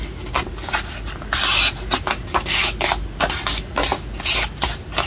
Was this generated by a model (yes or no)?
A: no